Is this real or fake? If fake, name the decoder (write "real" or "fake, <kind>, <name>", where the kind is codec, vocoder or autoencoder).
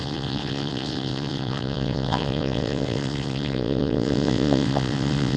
fake, vocoder, WaveNeXt